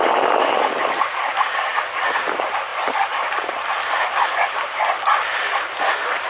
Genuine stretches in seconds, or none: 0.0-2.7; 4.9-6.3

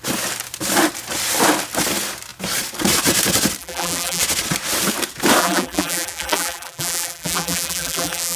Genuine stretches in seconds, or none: 0.0-3.6; 4.2-5.4

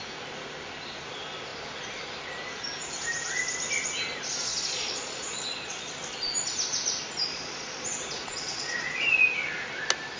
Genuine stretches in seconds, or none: 0.0-4.5; 5.9-7.3; 9.1-10.2

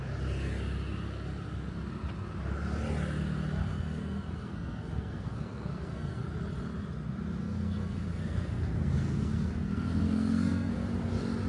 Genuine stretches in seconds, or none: 0.0-3.7; 6.2-7.4; 10.7-11.5

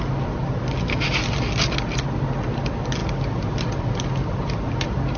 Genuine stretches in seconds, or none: 0.0-3.0; 4.7-5.2

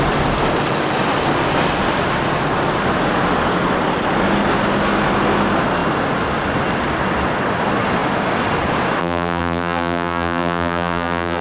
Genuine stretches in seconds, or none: 0.0-9.0

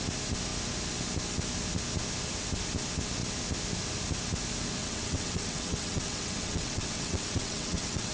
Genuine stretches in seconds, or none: 0.0-4.8

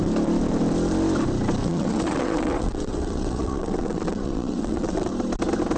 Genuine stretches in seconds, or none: 0.0-1.6; 5.1-5.8